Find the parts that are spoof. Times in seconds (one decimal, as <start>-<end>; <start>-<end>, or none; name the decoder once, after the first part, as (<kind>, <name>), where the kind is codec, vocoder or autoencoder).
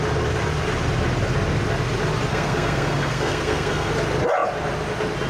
2.3-3.9 (codec, SNAC)